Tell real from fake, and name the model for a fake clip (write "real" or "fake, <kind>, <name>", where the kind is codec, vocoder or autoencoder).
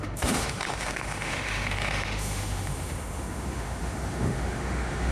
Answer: fake, autoencoder, DAC-VAE